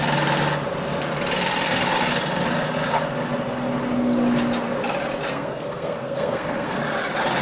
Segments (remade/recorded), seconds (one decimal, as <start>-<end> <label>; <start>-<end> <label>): 0.0-5.3 recorded; 5.3-6.8 remade; 6.8-7.4 recorded